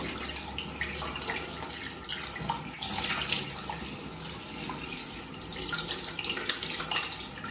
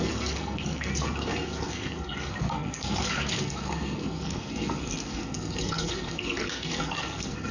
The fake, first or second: second